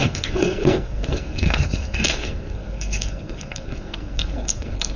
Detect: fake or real fake